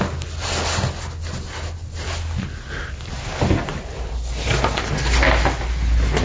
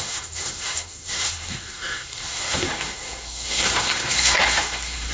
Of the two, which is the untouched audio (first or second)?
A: first